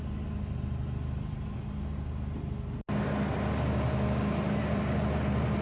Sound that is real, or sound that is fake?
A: real